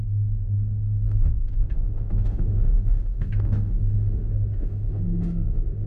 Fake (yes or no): yes